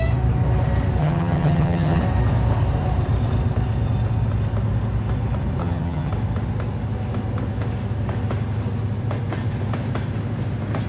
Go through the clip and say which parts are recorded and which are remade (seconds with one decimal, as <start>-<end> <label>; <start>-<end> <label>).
0.0-1.0 recorded; 1.0-2.0 remade; 2.0-5.6 recorded; 5.6-6.1 remade; 6.1-10.9 recorded